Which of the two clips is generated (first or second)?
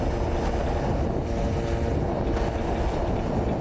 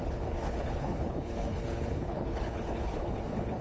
second